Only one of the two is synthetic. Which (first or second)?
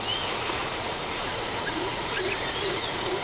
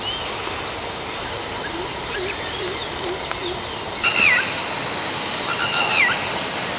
first